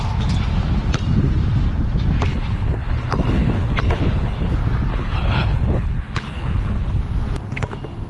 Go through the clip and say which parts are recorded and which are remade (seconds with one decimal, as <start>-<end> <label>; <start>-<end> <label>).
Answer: 0.0-2.3 recorded; 2.3-4.5 remade; 4.5-4.9 recorded; 4.9-7.0 remade; 7.0-8.1 recorded

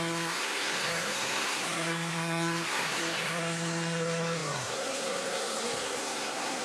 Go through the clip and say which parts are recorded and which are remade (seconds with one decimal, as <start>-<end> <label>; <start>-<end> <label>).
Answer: 0.0-6.6 remade

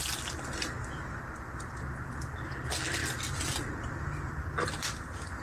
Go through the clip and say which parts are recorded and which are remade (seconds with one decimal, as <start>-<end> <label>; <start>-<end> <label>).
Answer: 0.0-5.4 recorded

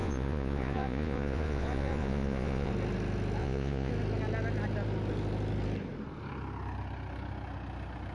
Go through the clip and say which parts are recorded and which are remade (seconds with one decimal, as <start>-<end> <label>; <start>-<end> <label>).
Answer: 0.0-2.7 remade; 2.7-3.4 recorded; 3.4-3.9 remade; 3.9-8.1 recorded

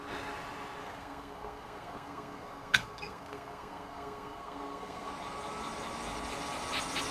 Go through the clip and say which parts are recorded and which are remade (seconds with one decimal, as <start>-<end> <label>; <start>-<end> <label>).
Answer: 0.0-0.8 recorded; 0.8-5.1 remade; 5.1-7.1 recorded